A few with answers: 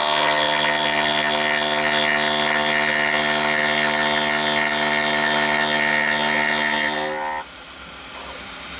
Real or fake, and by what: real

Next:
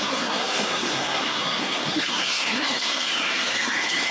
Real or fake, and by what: fake, codec, SNAC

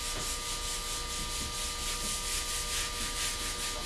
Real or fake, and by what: real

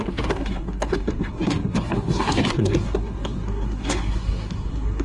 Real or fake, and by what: fake, codec, SNAC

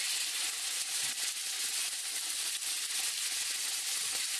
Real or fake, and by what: real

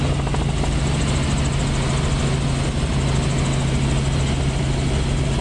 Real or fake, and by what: real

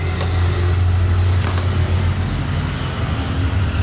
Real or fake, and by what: real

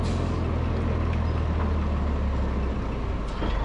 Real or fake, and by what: real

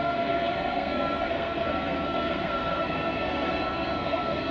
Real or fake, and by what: fake, codec, SNAC